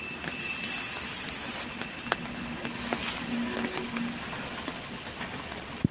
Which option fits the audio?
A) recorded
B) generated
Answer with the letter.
A